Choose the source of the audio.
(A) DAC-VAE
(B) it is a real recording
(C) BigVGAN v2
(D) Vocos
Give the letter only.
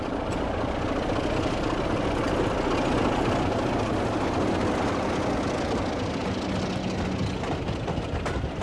B